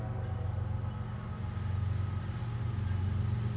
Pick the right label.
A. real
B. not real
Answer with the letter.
A